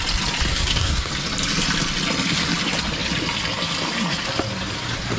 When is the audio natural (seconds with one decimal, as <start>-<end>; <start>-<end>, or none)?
0.0-0.5; 1.1-5.2